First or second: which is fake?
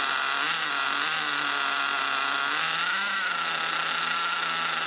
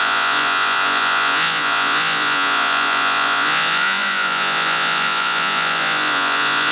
second